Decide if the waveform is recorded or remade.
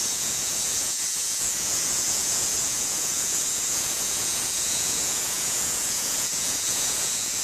remade